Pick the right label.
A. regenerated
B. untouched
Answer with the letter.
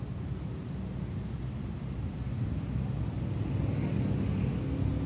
B